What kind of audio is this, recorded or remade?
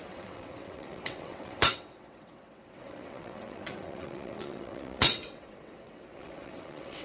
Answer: remade